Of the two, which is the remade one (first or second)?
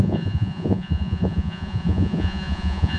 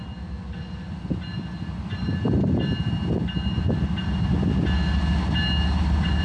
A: first